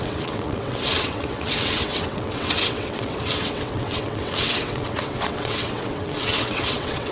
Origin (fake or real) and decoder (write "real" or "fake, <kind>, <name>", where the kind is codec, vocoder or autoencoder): fake, vocoder, WaveNeXt